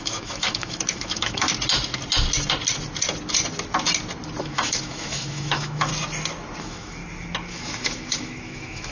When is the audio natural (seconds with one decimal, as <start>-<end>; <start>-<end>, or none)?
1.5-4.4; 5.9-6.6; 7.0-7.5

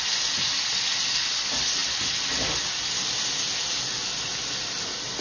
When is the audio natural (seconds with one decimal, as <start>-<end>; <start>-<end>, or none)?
0.0-5.2

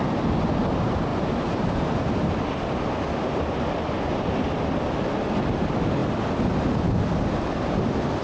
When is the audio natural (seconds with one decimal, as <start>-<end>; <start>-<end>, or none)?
0.0-8.2